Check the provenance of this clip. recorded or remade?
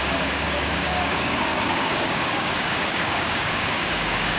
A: remade